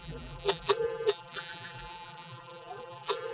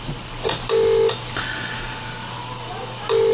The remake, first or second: first